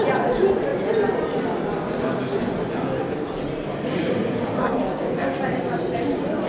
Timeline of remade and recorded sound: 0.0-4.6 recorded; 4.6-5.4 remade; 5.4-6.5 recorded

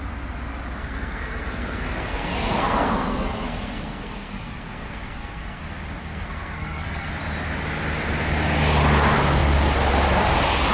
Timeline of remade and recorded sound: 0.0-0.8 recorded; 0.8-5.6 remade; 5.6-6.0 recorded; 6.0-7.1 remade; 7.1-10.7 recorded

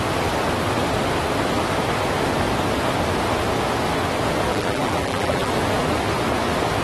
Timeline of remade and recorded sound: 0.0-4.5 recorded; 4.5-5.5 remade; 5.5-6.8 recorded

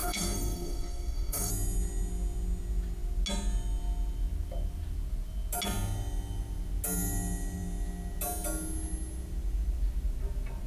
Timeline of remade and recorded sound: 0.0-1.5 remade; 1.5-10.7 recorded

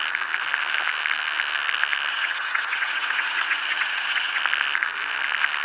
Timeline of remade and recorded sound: 0.0-2.1 recorded; 2.1-4.4 remade; 4.4-5.6 recorded